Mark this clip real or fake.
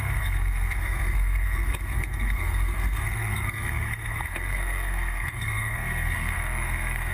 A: fake